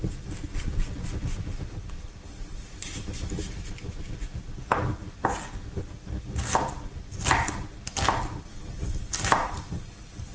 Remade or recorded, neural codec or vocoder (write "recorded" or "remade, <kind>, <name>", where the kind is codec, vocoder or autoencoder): recorded